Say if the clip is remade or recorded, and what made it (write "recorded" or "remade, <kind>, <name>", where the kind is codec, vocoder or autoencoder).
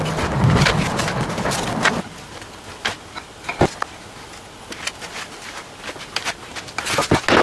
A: recorded